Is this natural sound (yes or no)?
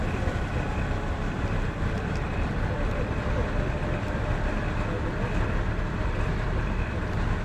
no